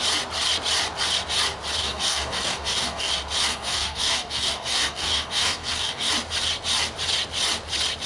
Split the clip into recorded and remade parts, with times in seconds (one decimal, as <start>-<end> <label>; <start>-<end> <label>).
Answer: 0.0-1.8 recorded; 1.8-3.1 remade; 3.1-3.5 recorded; 3.5-6.1 remade; 6.1-8.1 recorded